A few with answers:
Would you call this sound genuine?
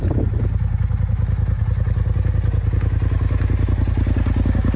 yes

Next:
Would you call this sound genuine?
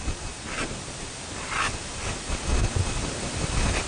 yes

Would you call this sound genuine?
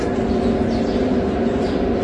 yes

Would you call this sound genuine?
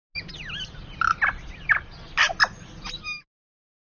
yes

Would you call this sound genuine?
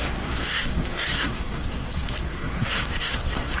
no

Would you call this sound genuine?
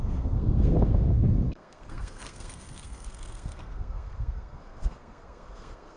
no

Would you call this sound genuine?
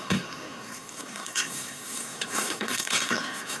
no